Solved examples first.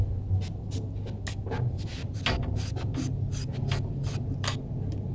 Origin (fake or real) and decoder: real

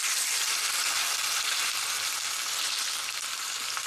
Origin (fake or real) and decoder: real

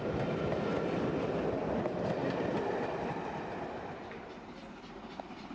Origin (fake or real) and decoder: real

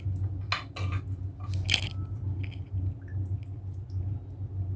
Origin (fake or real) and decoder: real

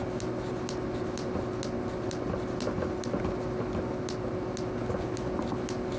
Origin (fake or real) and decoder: real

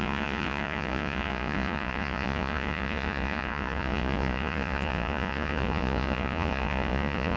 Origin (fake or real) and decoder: fake, vocoder, Vocos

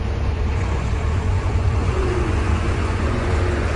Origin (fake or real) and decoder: fake, vocoder, Vocos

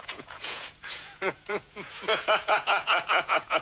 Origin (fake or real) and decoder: fake, vocoder, Vocos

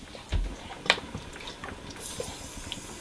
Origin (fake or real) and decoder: real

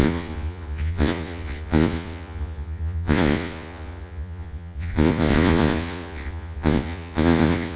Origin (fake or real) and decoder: fake, vocoder, Vocos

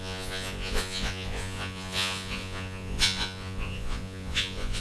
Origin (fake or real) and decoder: fake, vocoder, Vocos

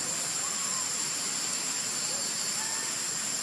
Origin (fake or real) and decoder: real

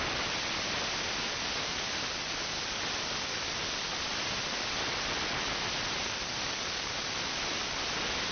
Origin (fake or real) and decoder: real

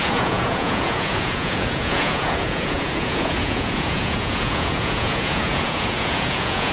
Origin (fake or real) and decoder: fake, vocoder, Vocos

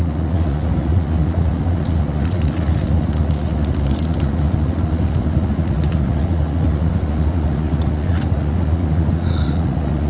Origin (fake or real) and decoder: fake, vocoder, Vocos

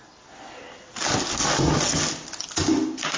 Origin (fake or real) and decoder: real